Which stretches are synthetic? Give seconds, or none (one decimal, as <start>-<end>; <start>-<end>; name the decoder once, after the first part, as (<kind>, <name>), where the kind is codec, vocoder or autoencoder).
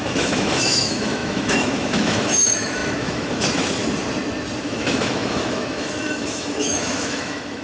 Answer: 0.0-3.8 (autoencoder, DAC-VAE); 4.6-7.6